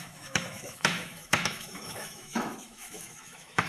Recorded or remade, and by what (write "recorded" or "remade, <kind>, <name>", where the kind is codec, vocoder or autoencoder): remade, autoencoder, DAC-VAE